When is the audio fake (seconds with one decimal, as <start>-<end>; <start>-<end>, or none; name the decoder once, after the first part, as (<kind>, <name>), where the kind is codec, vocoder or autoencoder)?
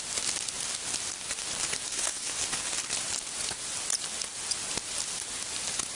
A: 1.9-2.4 (codec, SNAC)